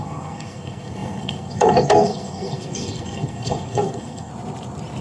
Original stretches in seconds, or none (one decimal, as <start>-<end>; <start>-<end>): 4.3-5.0